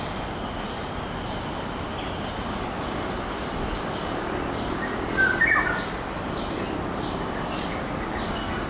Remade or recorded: recorded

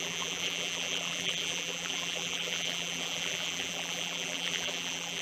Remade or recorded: remade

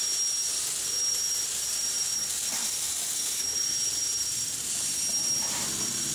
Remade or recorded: remade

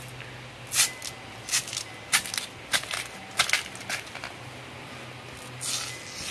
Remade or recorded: recorded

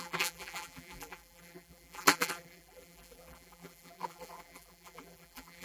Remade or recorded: remade